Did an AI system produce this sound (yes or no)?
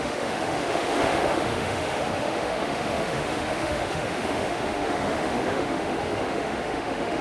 yes